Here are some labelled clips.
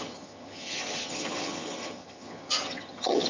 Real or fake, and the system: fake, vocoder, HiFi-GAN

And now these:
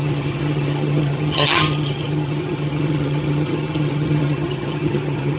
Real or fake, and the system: fake, vocoder, HiFi-GAN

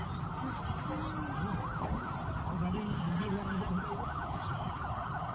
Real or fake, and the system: real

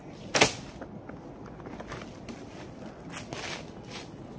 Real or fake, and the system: real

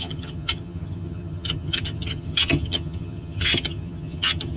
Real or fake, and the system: fake, vocoder, HiFi-GAN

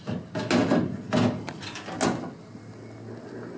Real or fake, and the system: real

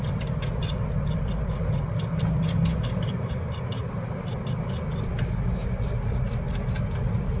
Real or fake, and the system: real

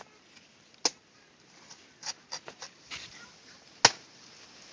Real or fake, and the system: real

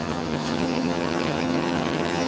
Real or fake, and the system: fake, vocoder, HiFi-GAN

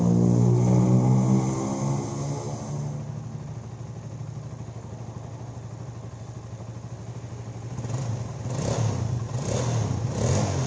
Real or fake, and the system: real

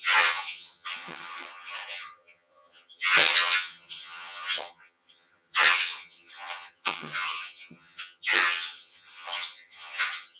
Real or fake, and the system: fake, vocoder, HiFi-GAN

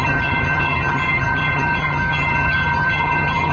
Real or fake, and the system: fake, vocoder, HiFi-GAN